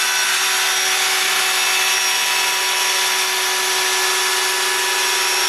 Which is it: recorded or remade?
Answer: recorded